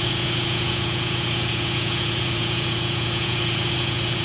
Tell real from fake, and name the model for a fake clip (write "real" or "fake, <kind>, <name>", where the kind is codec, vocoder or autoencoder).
fake, vocoder, Vocos